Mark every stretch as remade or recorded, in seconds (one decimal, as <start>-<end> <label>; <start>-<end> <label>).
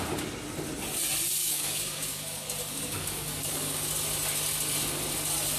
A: 0.0-1.4 recorded; 1.4-3.9 remade; 3.9-5.6 recorded